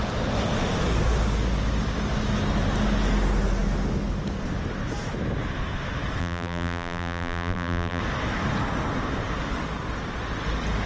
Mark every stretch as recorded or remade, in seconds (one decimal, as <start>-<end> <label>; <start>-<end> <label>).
0.0-6.2 recorded; 6.2-8.0 remade; 8.0-10.9 recorded